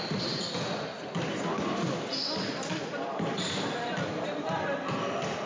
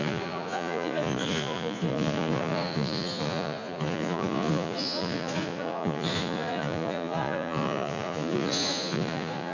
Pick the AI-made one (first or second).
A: second